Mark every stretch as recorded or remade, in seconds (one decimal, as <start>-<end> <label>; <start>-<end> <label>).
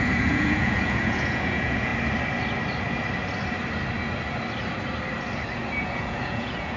0.0-1.9 remade; 1.9-5.8 recorded; 5.8-6.8 remade